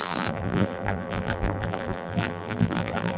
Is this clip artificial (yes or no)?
yes